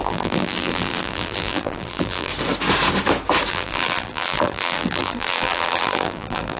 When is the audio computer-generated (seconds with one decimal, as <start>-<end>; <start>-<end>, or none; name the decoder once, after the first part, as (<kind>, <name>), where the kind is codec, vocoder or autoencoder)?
0.0-2.3 (vocoder, BigVGAN v2); 3.5-6.6